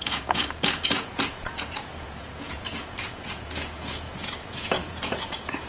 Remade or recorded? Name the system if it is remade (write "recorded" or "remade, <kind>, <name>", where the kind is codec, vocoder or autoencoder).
remade, vocoder, Vocos